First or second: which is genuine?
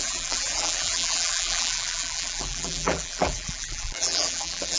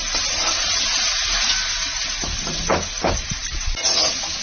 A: second